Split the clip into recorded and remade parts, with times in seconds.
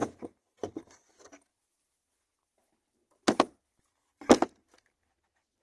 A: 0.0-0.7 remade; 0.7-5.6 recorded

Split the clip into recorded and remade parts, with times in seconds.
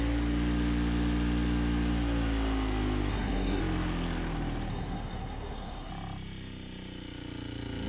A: 0.0-3.1 recorded; 3.1-3.6 remade; 3.6-4.7 recorded; 4.7-5.9 remade; 5.9-7.9 recorded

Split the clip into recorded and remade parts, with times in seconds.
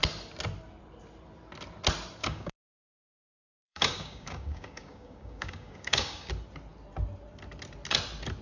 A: 0.0-2.2 recorded; 2.2-6.3 remade; 6.3-8.4 recorded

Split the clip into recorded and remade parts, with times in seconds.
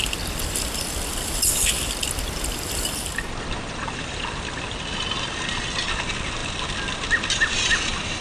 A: 0.0-8.2 recorded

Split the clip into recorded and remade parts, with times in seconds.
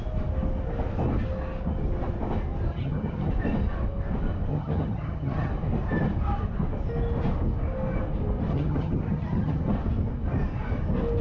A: 0.0-2.7 recorded; 2.7-3.3 remade; 3.3-4.5 recorded; 4.5-5.5 remade; 5.5-8.5 recorded; 8.5-9.7 remade; 9.7-11.2 recorded